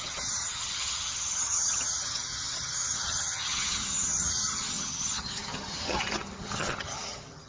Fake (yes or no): yes